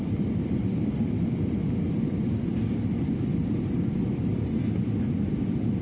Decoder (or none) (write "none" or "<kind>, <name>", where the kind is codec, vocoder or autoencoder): vocoder, BigVGAN v2